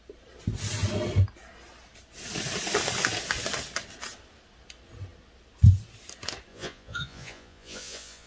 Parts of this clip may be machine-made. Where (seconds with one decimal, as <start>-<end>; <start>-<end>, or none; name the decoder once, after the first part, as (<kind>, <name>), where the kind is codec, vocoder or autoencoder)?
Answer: 6.5-8.3 (vocoder, Vocos)